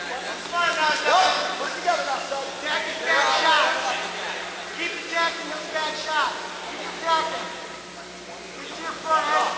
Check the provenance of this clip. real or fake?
real